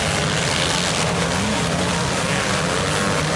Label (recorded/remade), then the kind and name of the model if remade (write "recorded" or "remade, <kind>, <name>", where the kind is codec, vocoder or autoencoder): recorded